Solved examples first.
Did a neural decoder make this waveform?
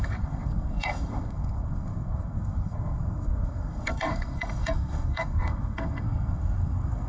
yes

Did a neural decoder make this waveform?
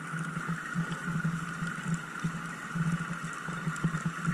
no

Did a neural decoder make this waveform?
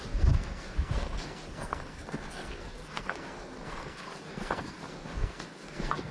yes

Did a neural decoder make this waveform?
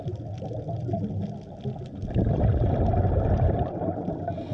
no